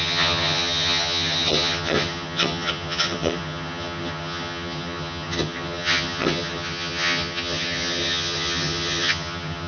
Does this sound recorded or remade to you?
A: remade